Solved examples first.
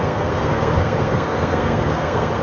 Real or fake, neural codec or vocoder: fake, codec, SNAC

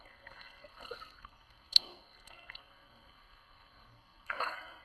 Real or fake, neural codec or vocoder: fake, codec, SNAC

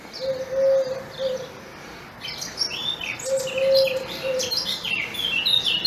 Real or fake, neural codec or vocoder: real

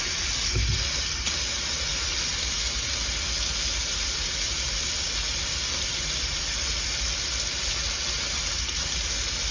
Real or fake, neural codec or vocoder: real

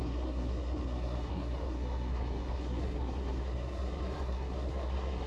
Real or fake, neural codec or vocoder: fake, codec, SNAC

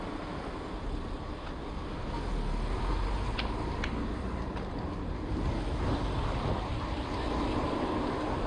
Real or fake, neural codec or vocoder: real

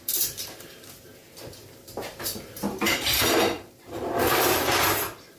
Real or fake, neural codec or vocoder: fake, vocoder, BigVGAN v2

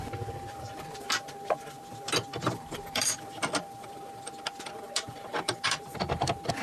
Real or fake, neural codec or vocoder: fake, vocoder, BigVGAN v2